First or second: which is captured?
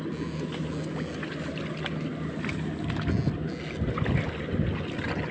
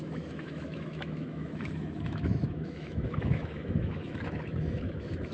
first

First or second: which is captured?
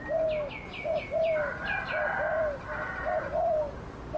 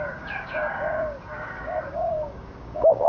first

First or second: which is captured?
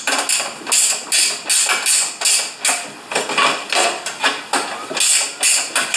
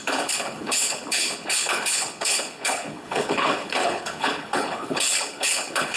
first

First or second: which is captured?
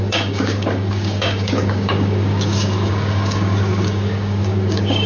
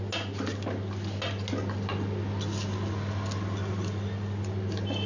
second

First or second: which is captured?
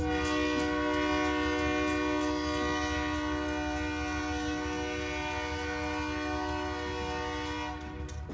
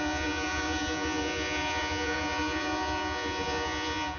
first